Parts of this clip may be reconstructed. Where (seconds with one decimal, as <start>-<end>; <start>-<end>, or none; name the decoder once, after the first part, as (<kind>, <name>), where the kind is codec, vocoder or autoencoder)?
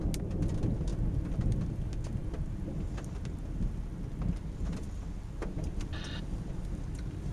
none